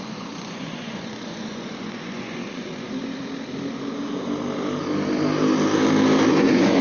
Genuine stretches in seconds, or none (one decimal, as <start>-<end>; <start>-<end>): 3.2-6.3